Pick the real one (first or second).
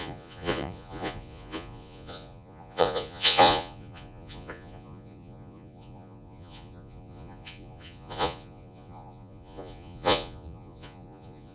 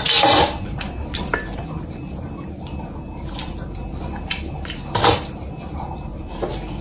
second